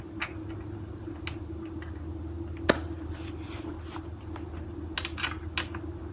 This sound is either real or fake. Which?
real